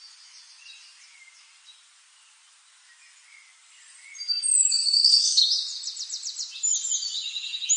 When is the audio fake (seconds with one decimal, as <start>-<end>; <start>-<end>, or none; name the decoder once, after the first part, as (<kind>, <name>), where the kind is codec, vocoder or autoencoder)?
4.7-5.4 (codec, SNAC)